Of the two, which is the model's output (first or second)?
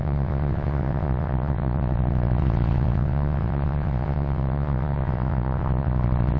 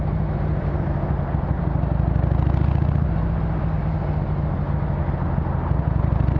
first